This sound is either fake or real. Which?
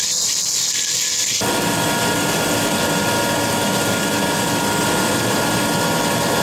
real